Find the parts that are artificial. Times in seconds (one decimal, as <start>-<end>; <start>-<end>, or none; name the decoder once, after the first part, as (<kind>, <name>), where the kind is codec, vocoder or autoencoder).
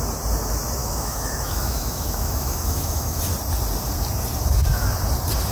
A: 0.8-3.2 (autoencoder, DAC-VAE)